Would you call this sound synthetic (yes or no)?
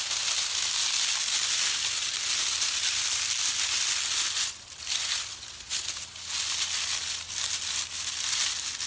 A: no